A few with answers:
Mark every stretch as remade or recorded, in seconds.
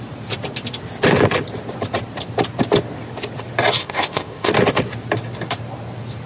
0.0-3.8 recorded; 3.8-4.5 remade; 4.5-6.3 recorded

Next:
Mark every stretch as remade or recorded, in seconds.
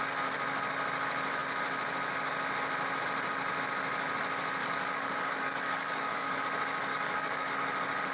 0.0-4.6 recorded; 4.6-6.4 remade; 6.4-6.9 recorded; 6.9-7.5 remade; 7.5-8.1 recorded